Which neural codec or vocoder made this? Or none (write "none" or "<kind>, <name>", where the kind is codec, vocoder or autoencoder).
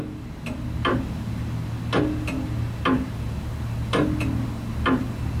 none